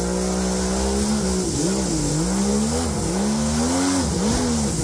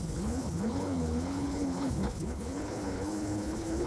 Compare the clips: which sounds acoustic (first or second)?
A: first